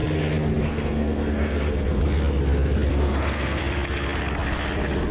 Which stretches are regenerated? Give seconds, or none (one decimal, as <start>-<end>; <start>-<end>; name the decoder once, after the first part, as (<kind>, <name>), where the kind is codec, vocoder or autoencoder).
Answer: 0.6-2.0 (codec, SNAC); 2.9-3.6